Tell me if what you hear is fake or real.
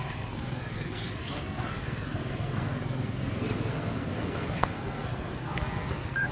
fake